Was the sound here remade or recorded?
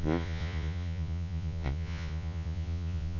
remade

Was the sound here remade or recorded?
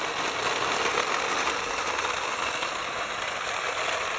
recorded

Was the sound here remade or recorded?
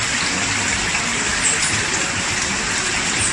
recorded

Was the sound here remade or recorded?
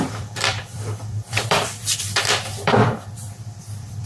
remade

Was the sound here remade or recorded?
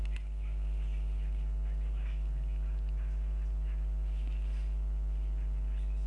recorded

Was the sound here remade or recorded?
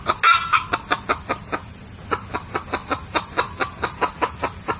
recorded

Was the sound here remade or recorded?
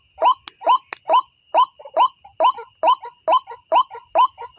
recorded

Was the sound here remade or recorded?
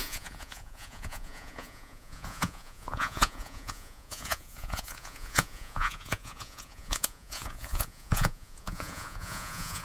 remade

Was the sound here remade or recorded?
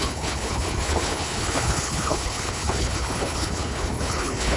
remade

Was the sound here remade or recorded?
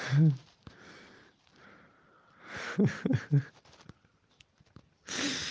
remade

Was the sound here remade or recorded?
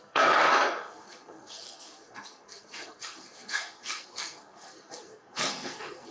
remade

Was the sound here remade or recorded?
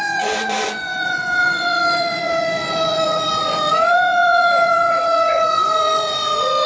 remade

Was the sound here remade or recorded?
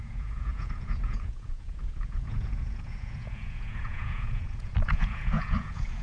remade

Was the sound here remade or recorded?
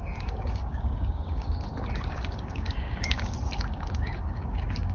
remade